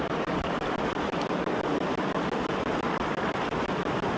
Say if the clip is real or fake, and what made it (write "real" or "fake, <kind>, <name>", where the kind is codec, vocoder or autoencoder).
real